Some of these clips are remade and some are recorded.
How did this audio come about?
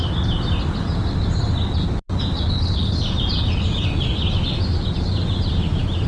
recorded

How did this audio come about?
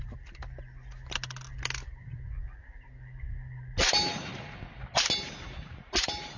recorded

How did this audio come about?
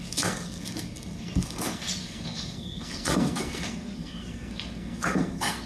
remade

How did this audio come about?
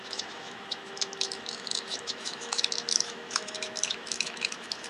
remade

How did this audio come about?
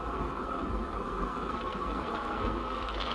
remade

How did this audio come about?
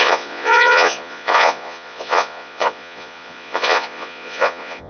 remade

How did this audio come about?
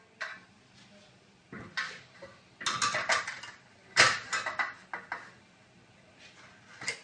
recorded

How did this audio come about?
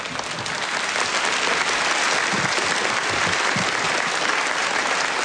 recorded